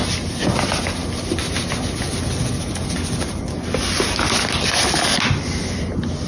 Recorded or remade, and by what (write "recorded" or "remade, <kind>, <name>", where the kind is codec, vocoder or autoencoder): recorded